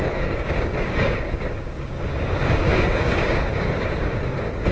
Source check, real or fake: fake